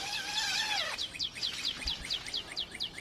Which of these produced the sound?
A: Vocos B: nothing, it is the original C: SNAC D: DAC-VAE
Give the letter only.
B